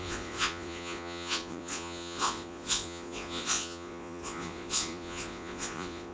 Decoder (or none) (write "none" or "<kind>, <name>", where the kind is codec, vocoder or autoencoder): vocoder, Vocos